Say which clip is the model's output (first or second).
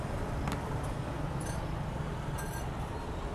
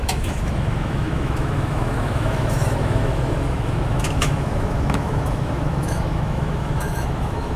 second